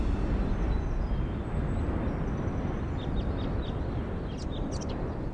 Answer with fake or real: real